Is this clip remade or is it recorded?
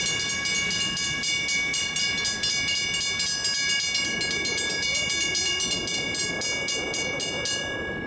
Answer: recorded